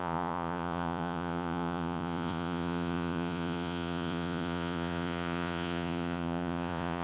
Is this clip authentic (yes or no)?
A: no